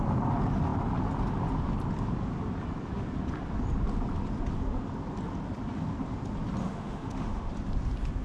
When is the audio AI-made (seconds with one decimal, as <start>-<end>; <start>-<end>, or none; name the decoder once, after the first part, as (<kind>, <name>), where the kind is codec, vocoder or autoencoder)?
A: 6.6-7.5 (autoencoder, DAC-VAE)